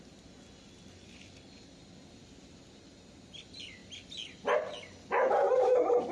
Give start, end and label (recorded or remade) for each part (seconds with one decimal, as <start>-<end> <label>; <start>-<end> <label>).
0.0-6.1 recorded